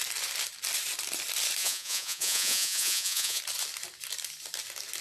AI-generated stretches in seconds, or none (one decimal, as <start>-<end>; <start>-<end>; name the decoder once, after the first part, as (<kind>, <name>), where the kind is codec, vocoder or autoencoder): 1.6-3.4 (vocoder, Vocos)